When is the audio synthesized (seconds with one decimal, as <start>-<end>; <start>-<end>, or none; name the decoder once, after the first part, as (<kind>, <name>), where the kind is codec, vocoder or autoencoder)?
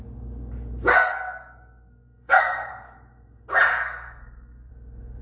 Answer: 0.9-2.7 (codec, SNAC); 3.7-4.7